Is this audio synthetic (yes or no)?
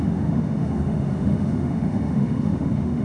yes